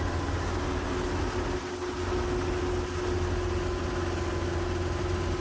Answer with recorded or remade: recorded